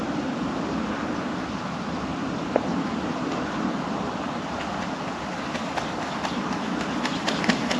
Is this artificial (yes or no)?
no